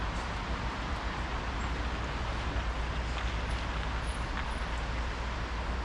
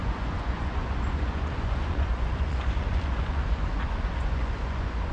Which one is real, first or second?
first